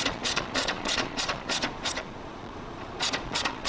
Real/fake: fake